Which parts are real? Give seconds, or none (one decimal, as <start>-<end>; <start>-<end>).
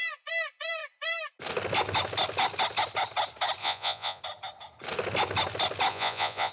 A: 0.0-3.6; 4.2-5.9